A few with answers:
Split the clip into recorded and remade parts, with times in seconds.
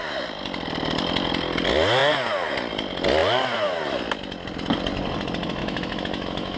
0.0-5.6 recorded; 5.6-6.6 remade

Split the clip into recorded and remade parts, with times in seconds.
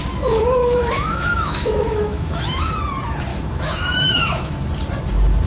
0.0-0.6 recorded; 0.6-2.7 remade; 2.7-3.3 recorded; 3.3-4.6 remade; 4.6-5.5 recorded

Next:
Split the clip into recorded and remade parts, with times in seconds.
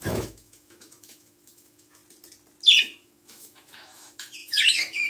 0.0-2.0 remade; 2.0-2.8 recorded; 2.8-5.1 remade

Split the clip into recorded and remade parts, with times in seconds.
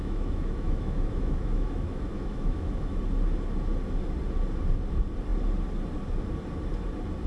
0.0-3.0 remade; 3.0-7.3 recorded